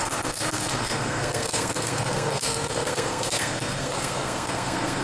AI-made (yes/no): yes